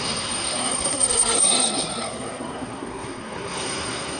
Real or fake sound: fake